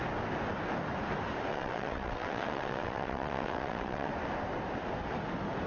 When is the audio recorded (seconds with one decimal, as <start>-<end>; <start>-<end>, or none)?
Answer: 0.0-1.5; 4.1-5.7